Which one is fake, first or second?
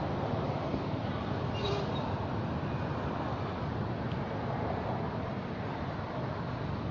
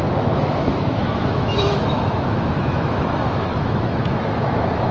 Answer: second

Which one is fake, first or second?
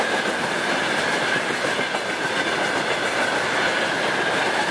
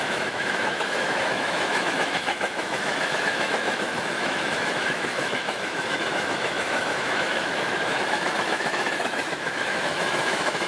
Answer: second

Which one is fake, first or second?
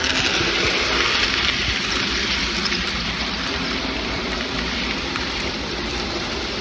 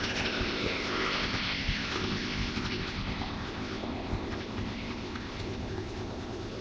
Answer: second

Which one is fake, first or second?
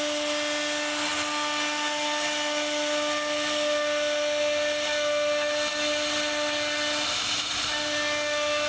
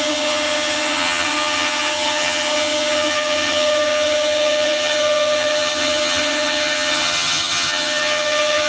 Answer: second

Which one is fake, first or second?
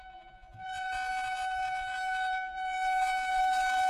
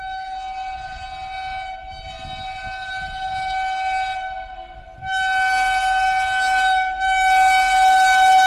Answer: first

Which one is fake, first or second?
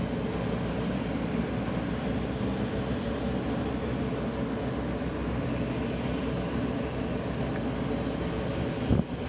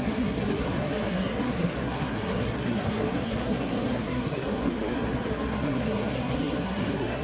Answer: second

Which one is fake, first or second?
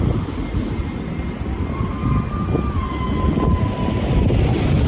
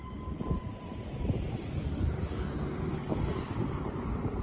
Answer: second